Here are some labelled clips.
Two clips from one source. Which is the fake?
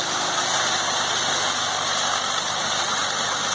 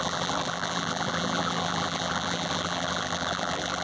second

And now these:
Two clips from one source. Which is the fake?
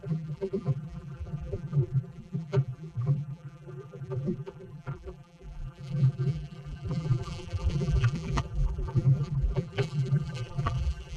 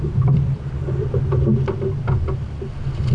first